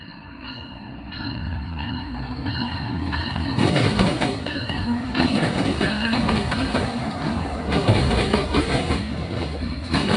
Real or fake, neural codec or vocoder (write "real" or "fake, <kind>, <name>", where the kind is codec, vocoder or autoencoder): fake, codec, SNAC